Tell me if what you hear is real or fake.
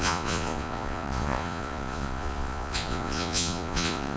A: fake